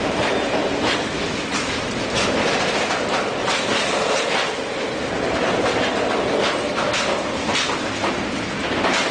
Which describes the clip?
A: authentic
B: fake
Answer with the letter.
A